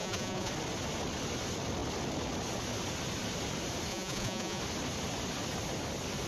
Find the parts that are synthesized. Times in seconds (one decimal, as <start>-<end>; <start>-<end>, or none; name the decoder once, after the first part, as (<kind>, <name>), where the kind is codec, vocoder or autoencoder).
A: 0.0-0.5 (vocoder, Vocos); 3.9-4.6